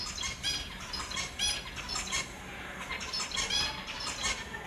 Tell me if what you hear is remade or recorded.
recorded